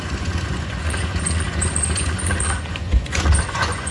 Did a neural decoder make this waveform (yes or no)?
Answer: yes